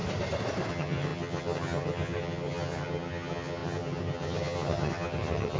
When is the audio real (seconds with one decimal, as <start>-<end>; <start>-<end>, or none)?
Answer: 0.0-0.7